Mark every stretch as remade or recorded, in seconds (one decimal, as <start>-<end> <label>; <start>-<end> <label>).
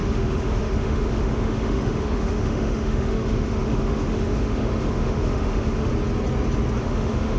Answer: 0.0-5.9 remade; 5.9-6.8 recorded; 6.8-7.4 remade